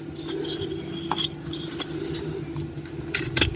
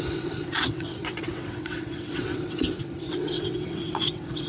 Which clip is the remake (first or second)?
second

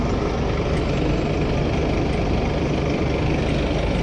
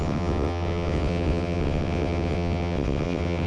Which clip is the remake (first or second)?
second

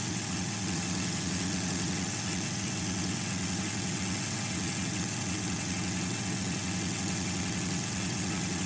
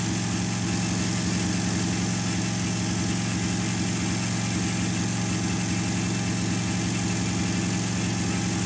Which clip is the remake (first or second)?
first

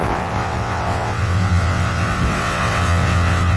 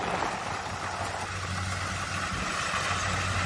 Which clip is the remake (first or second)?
first